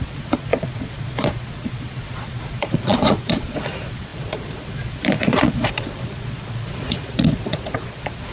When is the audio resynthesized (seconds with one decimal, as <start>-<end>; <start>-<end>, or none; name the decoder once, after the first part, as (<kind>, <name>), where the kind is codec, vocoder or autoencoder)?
0.0-8.3 (vocoder, Vocos)